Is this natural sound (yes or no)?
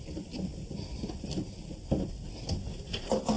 yes